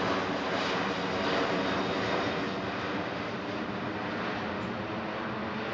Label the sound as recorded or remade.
recorded